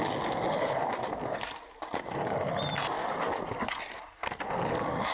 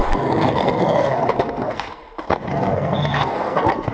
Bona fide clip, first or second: first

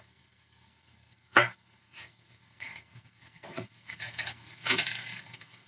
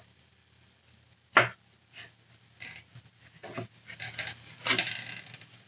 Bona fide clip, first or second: second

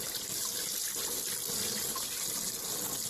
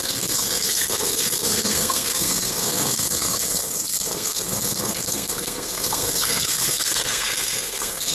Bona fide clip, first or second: first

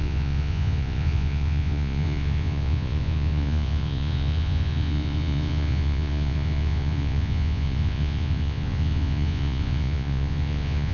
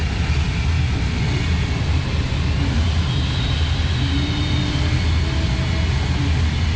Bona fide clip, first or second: second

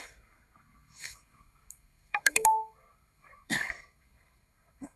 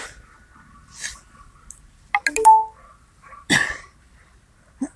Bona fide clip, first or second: second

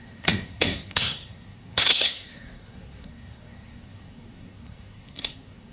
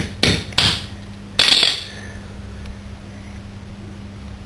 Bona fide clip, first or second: second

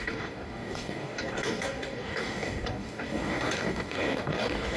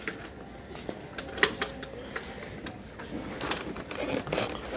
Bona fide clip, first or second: second